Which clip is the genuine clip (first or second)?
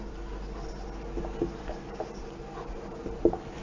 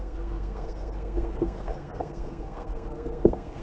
first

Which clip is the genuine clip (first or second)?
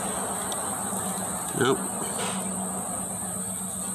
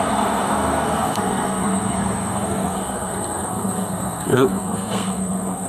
first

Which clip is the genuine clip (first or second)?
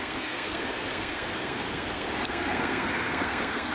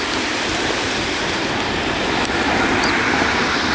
second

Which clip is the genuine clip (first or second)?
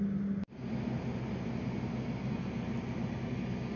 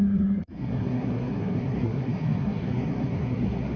first